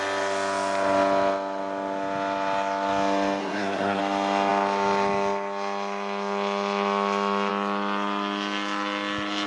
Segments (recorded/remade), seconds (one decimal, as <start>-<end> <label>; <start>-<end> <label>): 0.0-3.4 recorded; 3.4-4.0 remade; 4.0-9.5 recorded